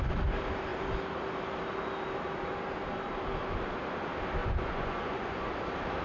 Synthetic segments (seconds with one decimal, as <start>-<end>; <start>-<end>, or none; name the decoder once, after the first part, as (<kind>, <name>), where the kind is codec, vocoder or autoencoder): 4.4-5.5 (vocoder, Vocos)